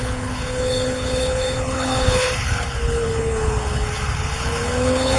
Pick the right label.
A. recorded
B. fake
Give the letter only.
B